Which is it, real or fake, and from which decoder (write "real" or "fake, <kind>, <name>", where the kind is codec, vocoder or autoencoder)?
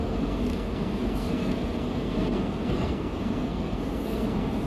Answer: fake, codec, SNAC